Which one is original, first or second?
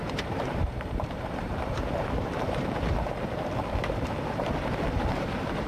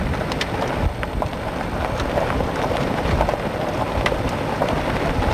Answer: second